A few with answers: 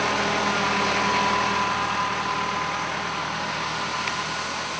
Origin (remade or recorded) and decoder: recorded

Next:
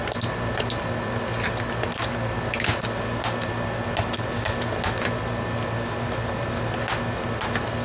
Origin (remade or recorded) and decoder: recorded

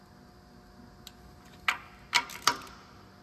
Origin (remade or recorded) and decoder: recorded